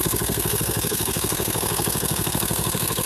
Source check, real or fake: fake